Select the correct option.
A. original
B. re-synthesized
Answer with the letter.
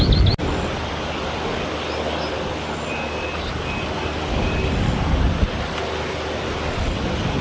A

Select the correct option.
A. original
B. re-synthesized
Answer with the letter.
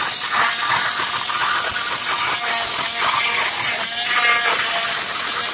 A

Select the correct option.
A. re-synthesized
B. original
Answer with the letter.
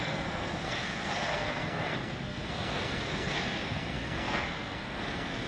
A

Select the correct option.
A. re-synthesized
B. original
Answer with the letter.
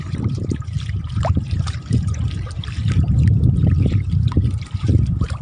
A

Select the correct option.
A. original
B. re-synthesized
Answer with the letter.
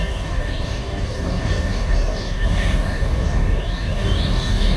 B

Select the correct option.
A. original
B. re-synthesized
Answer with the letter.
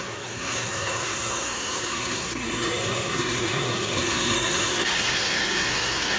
B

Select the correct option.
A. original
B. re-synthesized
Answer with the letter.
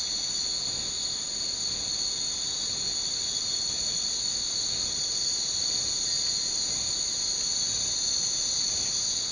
A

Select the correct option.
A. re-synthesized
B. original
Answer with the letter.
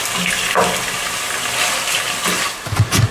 B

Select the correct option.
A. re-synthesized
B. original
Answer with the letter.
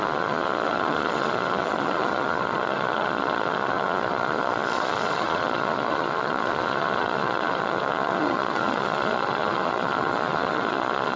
A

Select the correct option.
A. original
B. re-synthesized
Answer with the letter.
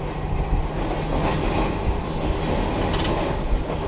A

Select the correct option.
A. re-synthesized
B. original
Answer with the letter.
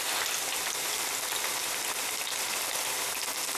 B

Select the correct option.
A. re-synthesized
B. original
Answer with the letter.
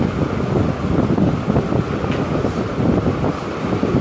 B